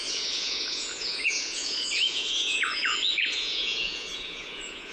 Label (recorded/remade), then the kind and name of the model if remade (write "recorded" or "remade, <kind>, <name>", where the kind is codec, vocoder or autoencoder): remade, vocoder, Vocos